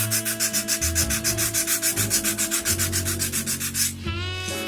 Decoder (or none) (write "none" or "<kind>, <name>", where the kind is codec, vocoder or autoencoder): none